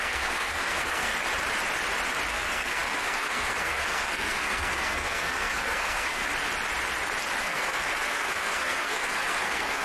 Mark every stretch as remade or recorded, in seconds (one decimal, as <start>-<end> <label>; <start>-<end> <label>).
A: 0.0-1.1 remade; 1.1-2.3 recorded; 2.3-6.2 remade; 6.2-7.4 recorded; 7.4-9.8 remade